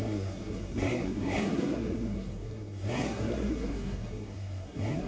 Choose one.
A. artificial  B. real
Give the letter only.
A